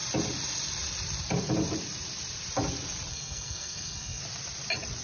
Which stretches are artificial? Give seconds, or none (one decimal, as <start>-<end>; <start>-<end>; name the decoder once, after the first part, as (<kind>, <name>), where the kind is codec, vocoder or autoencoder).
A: 3.1-4.2 (codec, SNAC)